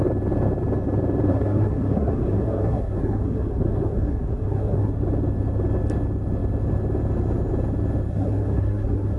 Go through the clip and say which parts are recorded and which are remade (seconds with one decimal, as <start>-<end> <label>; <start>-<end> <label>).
0.0-1.3 recorded; 1.3-4.9 remade; 4.9-8.1 recorded; 8.1-9.2 remade